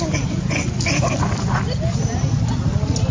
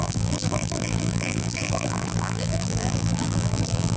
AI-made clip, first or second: second